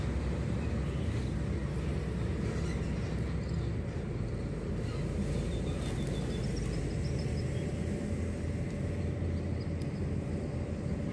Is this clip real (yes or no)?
yes